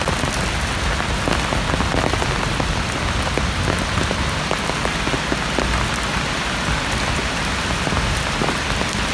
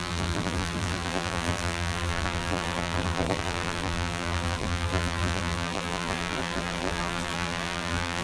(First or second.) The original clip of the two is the first